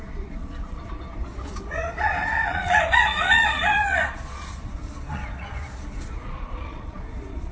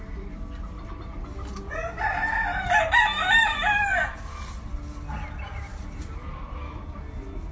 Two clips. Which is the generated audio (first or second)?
first